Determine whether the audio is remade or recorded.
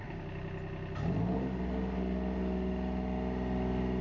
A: recorded